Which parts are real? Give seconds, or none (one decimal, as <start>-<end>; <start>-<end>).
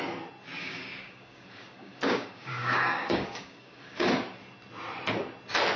0.0-0.6; 4.1-5.8